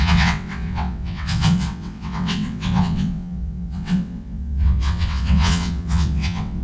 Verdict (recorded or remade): remade